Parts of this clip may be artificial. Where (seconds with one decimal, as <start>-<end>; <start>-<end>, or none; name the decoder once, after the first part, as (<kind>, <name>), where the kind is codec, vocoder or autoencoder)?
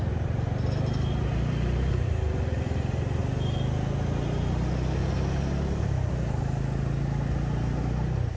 none